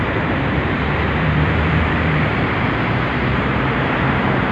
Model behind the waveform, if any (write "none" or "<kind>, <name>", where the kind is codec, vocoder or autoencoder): vocoder, BigVGAN v2